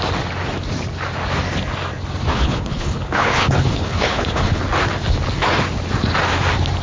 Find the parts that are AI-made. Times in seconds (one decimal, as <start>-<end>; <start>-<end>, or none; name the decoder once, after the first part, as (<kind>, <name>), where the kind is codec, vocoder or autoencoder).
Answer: 2.3-4.6 (codec, HILCodec)